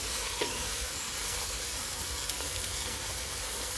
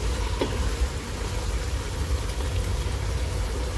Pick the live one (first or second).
second